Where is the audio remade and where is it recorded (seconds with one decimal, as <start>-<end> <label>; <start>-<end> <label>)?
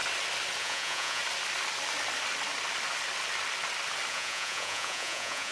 0.0-0.6 recorded; 0.6-1.2 remade; 1.2-4.1 recorded; 4.1-5.5 remade